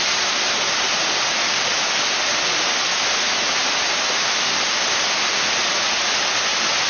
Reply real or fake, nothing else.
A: real